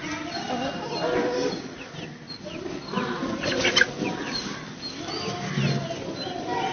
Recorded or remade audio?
recorded